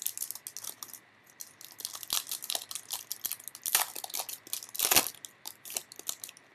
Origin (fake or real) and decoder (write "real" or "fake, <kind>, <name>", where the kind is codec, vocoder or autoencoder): real